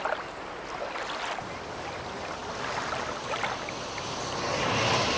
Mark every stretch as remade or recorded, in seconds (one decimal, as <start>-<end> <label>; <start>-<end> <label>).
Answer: 0.0-5.2 recorded